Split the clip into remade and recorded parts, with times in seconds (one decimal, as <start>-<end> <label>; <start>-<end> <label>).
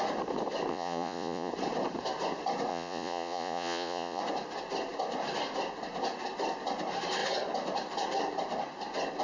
0.0-0.7 recorded; 0.7-1.5 remade; 1.5-2.7 recorded; 2.7-4.2 remade; 4.2-9.2 recorded